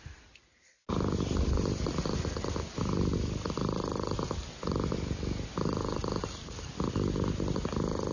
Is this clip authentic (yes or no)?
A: yes